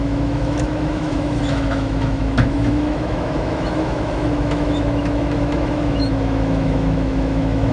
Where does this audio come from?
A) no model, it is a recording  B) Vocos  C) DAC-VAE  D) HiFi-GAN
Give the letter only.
C